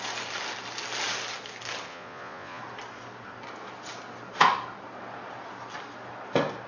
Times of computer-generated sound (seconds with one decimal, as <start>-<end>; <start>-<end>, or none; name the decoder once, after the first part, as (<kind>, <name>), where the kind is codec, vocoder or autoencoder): 1.9-2.6 (vocoder, Vocos)